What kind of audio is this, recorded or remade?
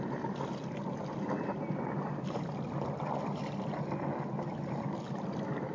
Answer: recorded